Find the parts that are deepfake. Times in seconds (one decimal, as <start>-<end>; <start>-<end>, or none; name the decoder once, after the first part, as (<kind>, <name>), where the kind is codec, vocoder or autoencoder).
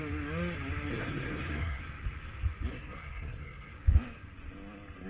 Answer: 0.9-1.8 (codec, SNAC); 2.7-3.7